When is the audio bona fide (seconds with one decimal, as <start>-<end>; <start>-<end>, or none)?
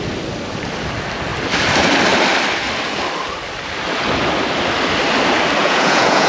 0.0-5.6